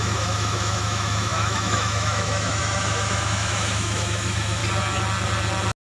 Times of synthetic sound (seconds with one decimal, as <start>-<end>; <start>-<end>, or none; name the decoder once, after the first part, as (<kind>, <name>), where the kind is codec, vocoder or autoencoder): 0.0-4.6 (autoencoder, DAC-VAE)